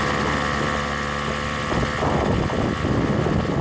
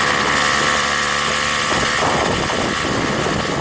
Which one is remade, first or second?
second